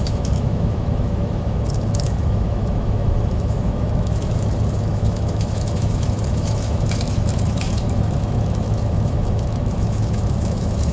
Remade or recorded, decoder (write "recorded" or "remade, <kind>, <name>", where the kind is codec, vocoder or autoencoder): remade, autoencoder, DAC-VAE